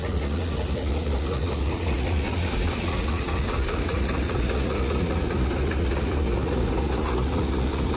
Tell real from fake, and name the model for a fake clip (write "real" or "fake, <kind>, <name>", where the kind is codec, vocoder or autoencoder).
fake, vocoder, Vocos